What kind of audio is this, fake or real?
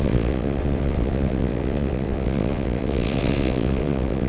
fake